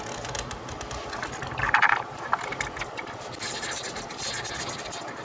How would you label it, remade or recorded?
recorded